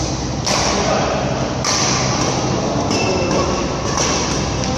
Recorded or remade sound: recorded